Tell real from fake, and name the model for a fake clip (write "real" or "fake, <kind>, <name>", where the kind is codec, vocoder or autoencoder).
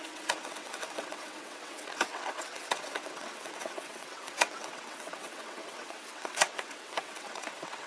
fake, vocoder, WaveNeXt